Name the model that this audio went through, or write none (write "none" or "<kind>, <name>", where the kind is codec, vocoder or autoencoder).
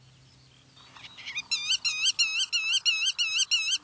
none